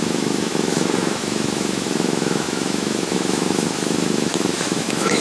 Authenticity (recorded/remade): remade